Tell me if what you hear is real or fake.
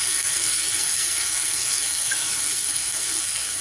fake